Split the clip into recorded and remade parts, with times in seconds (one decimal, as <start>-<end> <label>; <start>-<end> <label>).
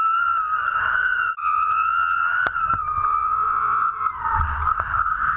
0.0-1.4 recorded; 1.4-2.2 remade; 2.2-3.2 recorded; 3.2-4.1 remade; 4.1-5.4 recorded